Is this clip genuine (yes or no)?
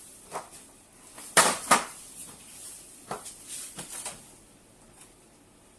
no